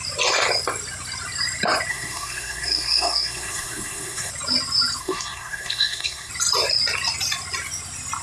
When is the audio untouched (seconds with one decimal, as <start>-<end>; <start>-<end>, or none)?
0.0-1.9; 4.3-5.0; 6.3-8.2